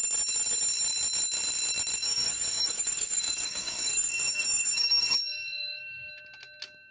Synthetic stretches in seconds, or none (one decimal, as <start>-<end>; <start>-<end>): 2.0-6.1